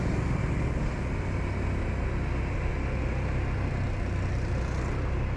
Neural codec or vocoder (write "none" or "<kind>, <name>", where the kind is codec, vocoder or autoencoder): none